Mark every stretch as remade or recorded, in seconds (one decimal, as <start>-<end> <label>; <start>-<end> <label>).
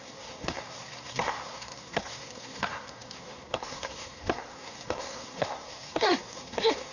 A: 0.0-6.9 remade